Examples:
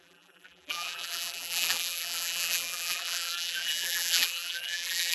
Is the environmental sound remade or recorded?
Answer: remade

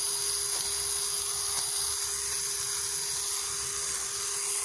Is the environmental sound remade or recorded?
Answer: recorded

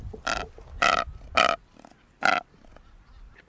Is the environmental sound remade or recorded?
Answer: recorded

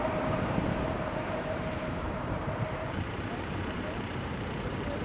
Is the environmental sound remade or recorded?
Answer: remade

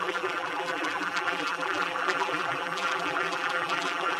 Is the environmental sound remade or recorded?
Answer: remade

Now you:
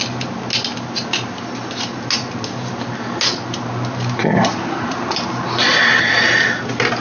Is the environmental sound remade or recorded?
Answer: recorded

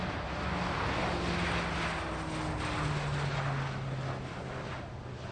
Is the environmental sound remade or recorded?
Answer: recorded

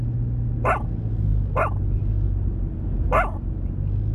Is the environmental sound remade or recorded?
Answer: recorded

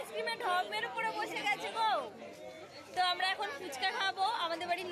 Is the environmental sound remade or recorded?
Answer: recorded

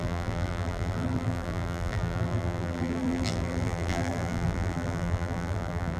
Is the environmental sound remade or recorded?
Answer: remade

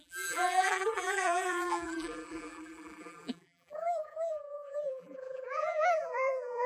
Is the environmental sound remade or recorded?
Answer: remade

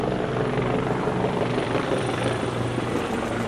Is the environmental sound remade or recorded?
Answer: remade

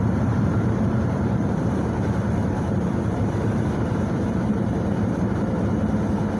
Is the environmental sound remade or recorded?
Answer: remade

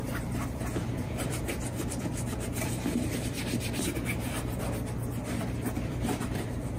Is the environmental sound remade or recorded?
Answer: remade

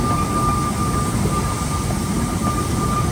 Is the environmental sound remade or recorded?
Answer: recorded